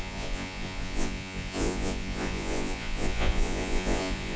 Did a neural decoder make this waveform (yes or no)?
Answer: yes